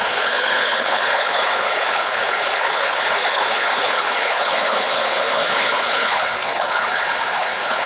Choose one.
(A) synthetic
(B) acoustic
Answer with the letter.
A